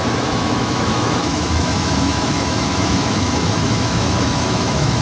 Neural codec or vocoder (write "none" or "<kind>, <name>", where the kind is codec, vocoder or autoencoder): autoencoder, DAC-VAE